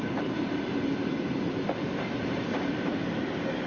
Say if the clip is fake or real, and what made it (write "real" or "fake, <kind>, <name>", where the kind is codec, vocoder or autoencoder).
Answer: fake, vocoder, BigVGAN v2